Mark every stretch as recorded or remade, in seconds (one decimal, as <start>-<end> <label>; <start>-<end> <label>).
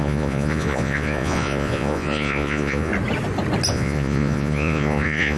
0.0-2.9 remade; 2.9-3.7 recorded; 3.7-5.4 remade